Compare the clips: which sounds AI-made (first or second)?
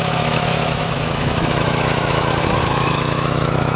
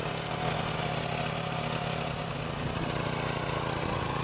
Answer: first